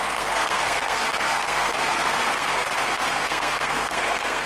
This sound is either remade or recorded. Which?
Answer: remade